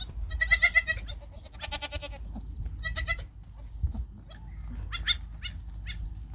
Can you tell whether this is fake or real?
real